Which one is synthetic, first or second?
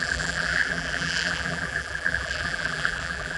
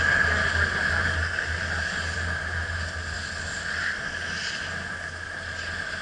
first